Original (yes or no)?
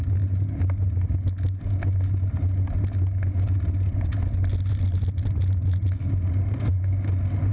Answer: yes